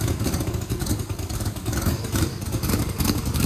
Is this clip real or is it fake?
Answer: fake